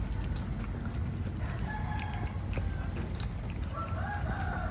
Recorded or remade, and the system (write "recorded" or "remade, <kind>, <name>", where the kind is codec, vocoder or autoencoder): recorded